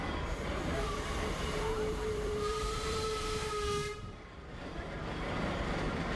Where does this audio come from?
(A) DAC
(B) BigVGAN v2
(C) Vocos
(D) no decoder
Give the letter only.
B